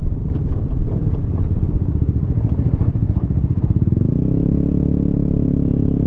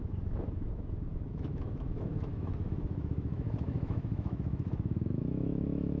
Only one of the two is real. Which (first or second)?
first